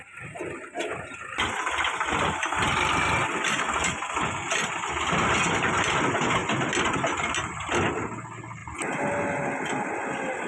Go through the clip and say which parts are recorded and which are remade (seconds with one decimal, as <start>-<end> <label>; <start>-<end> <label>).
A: 0.0-10.5 recorded